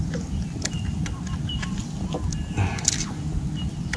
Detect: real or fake real